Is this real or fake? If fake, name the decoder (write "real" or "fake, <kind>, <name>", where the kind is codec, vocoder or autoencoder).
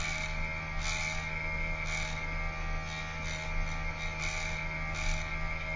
real